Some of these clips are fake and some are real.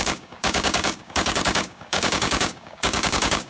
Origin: fake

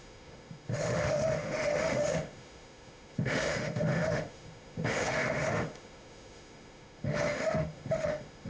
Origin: fake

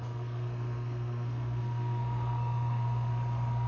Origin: fake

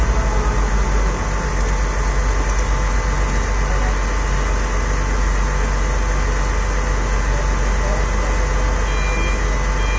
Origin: real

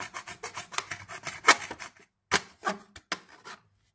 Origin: real